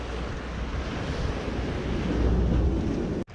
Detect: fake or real real